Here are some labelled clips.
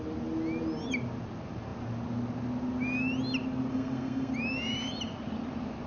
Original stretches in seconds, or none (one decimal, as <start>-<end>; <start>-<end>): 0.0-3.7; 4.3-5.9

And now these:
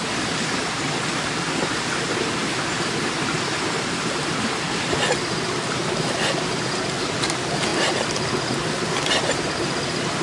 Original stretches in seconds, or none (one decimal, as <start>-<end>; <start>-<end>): 0.0-10.2

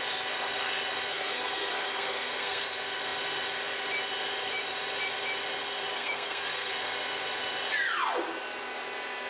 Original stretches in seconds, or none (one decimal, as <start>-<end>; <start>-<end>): 0.0-1.1; 2.6-5.9; 6.7-9.3

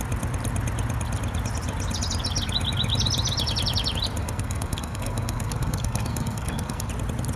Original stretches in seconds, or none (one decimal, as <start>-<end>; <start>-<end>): 0.0-4.2; 6.9-7.4

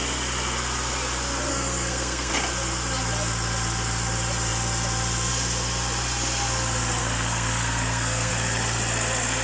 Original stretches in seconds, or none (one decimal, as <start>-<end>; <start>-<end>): 0.0-1.5; 2.3-7.0; 8.3-9.4

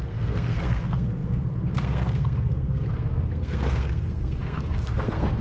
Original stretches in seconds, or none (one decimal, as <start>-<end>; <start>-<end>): none

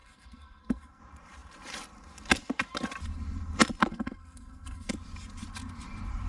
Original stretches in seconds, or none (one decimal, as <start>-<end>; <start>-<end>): 1.0-3.9; 4.9-6.3

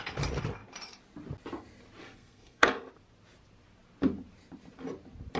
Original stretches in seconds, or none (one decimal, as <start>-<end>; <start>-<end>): 0.0-2.0; 2.9-5.4